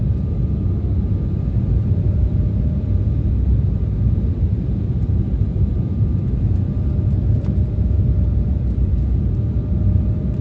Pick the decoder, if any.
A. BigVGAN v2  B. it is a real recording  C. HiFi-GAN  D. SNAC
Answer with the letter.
A